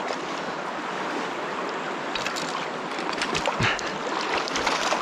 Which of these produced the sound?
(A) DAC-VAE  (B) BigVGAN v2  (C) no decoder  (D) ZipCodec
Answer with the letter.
C